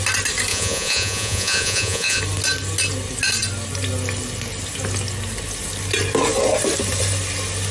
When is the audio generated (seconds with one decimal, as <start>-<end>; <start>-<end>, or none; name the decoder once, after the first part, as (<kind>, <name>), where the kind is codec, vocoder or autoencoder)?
0.5-2.2 (vocoder, Vocos)